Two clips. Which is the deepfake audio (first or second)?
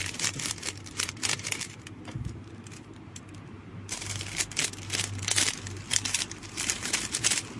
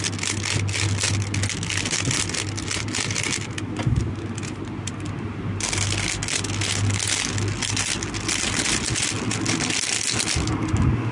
first